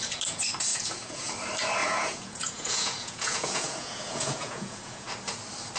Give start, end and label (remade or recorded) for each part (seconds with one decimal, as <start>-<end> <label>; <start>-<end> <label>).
0.0-0.7 recorded; 0.7-1.3 remade; 1.3-1.8 recorded; 1.8-5.1 remade; 5.1-5.8 recorded